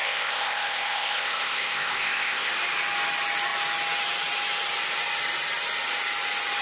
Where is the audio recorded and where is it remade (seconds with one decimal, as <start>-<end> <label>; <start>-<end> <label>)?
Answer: 0.0-2.5 remade; 2.5-6.6 recorded